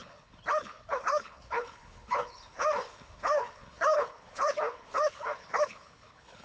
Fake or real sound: fake